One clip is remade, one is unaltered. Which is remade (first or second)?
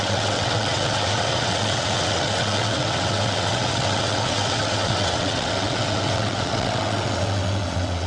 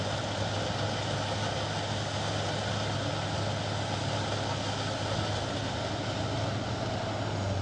first